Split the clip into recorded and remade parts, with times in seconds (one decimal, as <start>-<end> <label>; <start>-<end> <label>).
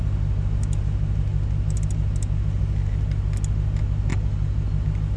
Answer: 0.0-5.2 recorded